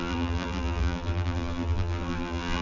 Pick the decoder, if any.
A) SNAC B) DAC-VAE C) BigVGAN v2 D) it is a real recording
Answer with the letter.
C